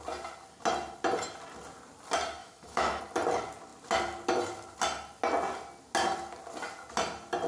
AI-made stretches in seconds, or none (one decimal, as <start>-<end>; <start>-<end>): 2.4-3.0